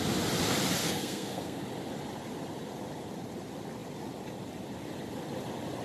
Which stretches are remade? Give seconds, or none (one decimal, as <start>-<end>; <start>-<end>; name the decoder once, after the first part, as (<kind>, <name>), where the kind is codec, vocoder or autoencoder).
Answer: 0.8-1.6 (codec, SNAC)